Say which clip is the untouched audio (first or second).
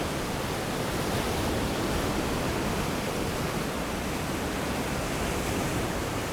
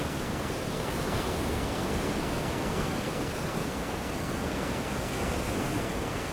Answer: first